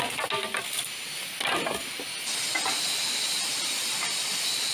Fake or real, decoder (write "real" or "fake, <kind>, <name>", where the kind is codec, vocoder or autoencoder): real